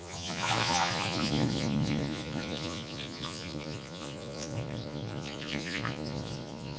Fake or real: fake